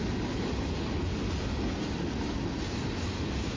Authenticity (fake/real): real